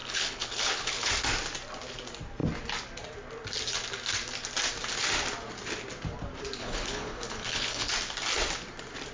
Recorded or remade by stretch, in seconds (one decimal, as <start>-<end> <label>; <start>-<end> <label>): 0.0-1.1 remade; 1.1-6.6 recorded; 6.6-7.9 remade; 7.9-9.1 recorded

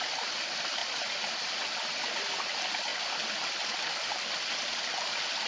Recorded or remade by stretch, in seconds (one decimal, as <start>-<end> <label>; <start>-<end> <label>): 0.0-5.5 recorded

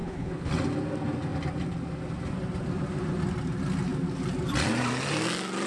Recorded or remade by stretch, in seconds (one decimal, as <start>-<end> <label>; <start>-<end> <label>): 0.0-0.5 remade; 0.5-5.7 recorded

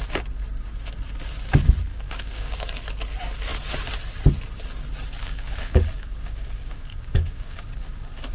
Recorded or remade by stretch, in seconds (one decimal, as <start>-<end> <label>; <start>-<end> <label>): 0.0-1.9 recorded; 1.9-2.7 remade; 2.7-5.2 recorded; 5.2-7.7 remade; 7.7-8.3 recorded

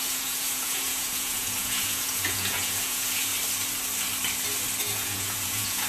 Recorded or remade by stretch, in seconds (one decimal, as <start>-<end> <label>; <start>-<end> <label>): 0.0-3.3 remade; 3.3-4.8 recorded; 4.8-5.9 remade

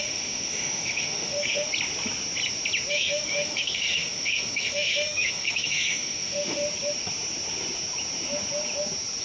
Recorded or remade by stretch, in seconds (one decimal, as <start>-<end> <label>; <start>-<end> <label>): 0.0-1.7 remade; 1.7-2.9 recorded; 2.9-6.6 remade; 6.6-9.2 recorded